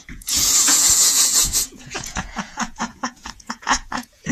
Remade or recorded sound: remade